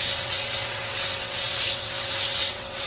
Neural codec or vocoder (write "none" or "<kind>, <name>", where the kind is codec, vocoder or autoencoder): vocoder, WaveNeXt